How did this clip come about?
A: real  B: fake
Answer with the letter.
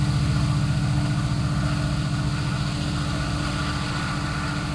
A